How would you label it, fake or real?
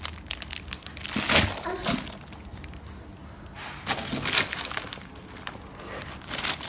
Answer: real